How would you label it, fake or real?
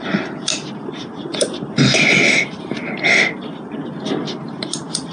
fake